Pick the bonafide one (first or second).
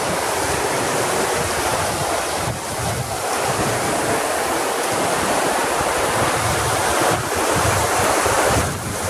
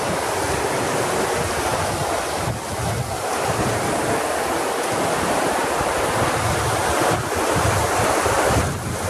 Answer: second